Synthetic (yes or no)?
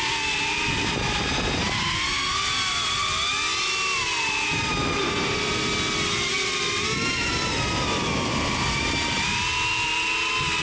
no